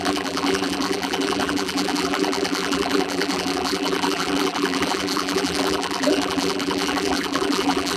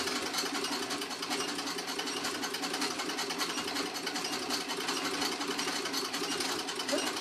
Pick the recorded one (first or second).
second